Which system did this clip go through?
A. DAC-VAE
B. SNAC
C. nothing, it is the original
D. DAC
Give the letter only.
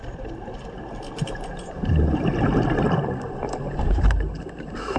C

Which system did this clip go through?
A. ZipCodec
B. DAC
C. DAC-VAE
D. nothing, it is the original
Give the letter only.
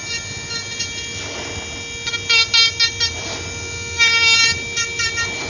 D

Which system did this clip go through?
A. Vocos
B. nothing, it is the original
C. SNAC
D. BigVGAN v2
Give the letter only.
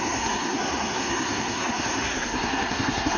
C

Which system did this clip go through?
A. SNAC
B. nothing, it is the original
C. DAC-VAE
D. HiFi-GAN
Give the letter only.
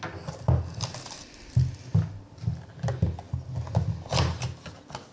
B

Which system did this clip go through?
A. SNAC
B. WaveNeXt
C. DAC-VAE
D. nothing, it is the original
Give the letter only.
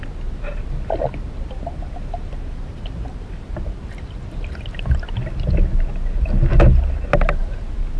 D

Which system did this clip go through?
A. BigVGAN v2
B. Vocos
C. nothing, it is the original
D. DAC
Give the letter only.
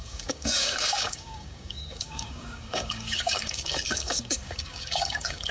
D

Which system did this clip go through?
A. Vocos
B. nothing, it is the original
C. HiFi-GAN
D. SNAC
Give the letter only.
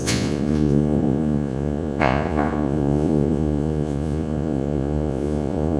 A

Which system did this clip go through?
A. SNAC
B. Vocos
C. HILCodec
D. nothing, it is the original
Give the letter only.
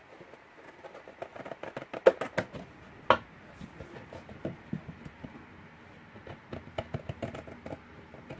D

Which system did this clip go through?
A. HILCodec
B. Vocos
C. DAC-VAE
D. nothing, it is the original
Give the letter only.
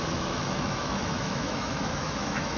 C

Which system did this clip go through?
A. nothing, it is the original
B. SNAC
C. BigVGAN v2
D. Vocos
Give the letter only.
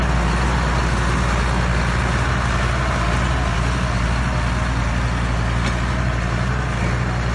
A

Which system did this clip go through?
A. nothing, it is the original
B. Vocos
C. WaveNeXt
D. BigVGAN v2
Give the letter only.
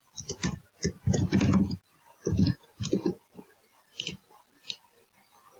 A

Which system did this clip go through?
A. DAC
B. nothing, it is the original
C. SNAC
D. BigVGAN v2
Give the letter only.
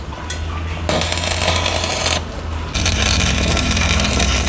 B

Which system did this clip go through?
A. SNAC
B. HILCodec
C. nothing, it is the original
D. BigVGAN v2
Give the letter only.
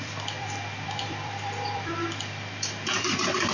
D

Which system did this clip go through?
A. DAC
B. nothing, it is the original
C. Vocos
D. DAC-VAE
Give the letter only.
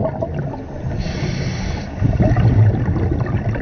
B